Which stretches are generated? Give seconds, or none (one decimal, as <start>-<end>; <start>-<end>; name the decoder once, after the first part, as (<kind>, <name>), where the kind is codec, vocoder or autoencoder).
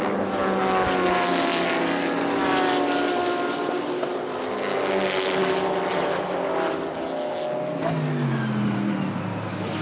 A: none